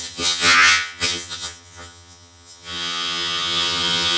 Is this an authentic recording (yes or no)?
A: no